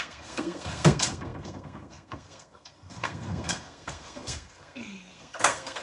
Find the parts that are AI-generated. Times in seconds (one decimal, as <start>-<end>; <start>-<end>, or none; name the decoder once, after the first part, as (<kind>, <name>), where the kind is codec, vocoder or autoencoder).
0.0-5.8 (codec, SNAC)

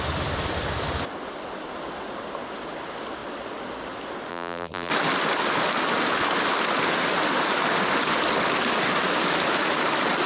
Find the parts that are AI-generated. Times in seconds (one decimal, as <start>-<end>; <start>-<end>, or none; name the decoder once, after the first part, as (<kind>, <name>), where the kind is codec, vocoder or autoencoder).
4.3-4.9 (vocoder, BigVGAN v2)